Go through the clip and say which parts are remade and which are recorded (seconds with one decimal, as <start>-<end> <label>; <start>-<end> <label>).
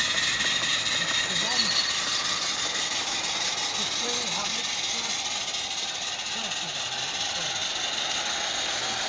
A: 0.0-9.1 recorded